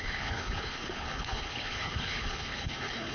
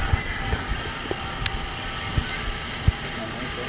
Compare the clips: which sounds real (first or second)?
second